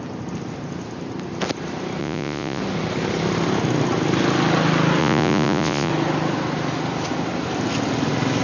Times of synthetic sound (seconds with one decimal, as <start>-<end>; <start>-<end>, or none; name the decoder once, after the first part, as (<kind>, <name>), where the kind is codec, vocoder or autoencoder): 2.0-2.6 (vocoder, Vocos); 5.0-5.9